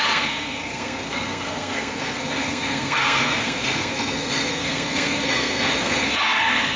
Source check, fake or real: fake